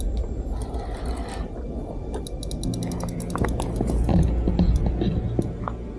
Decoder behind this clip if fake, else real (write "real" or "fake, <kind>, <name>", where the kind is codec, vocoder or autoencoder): real